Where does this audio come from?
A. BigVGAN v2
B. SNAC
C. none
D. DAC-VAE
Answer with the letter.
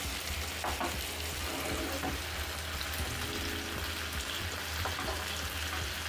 C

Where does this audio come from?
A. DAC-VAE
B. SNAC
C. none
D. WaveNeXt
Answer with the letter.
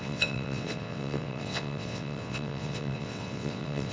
D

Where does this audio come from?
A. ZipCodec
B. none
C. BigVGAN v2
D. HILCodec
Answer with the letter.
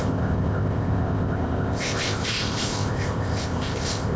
A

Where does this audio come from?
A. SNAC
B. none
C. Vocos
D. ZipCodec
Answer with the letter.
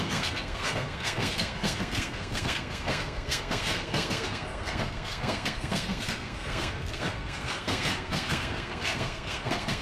A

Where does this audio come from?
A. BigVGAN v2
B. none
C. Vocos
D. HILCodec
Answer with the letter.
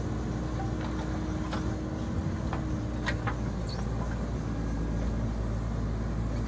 B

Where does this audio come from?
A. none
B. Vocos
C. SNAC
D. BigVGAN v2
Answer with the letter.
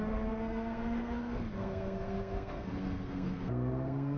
C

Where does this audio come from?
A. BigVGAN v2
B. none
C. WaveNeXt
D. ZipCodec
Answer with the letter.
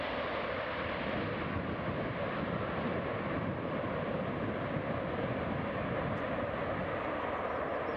B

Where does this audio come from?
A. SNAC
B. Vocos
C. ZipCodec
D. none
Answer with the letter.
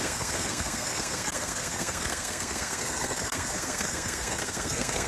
A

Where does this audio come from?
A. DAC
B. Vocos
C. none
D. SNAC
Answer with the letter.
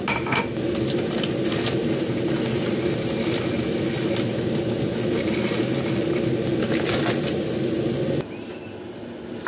C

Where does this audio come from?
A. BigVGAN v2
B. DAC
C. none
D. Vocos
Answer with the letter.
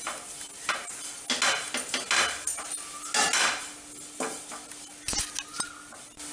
C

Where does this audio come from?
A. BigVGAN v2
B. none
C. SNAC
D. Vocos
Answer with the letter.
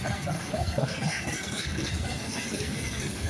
C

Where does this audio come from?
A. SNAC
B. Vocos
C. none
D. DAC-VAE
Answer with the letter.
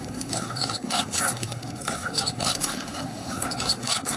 A